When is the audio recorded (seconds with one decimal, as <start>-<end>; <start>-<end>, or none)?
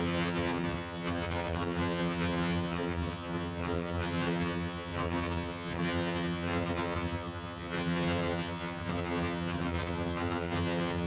none